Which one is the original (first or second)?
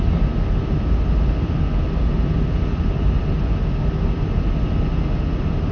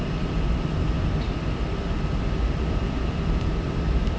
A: first